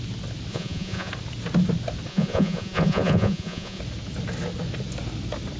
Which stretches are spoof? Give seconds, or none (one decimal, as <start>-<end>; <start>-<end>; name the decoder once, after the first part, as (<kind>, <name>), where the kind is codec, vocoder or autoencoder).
0.5-1.1 (vocoder, Vocos); 2.1-3.8